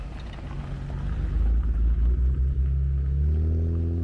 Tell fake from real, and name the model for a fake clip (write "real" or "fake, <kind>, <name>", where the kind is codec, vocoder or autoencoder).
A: real